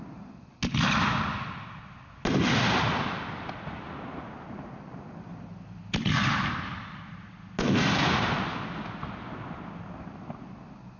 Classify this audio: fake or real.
real